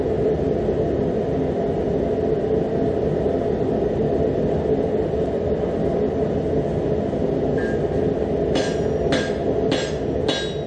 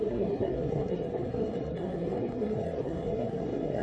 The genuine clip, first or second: first